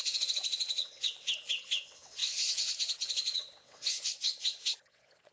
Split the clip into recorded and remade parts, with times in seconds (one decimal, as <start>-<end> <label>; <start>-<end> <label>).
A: 0.0-5.3 remade